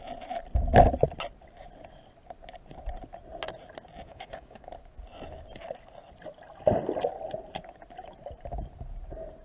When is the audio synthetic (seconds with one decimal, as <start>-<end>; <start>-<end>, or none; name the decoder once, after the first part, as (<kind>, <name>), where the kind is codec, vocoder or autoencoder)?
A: 4.1-4.7 (codec, DAC)